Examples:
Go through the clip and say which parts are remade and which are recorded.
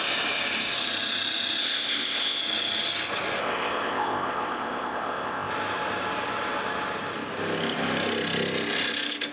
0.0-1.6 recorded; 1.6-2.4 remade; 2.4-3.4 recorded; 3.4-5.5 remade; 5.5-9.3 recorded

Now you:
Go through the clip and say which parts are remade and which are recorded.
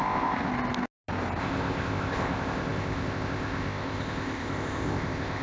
0.0-0.5 remade; 0.5-1.4 recorded; 1.4-5.4 remade